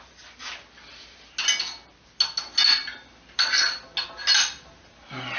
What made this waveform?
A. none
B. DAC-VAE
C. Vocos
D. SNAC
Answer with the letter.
A